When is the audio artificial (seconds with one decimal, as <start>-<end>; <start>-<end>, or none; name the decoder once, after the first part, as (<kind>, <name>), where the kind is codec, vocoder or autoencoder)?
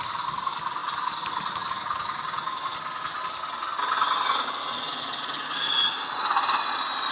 none